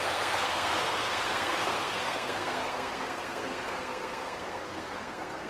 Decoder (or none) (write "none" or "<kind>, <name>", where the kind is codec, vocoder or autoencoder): codec, SNAC